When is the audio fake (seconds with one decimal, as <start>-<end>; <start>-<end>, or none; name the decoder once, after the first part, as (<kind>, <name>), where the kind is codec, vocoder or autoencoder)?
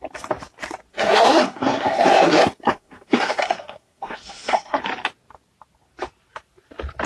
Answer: 0.9-4.8 (codec, SNAC)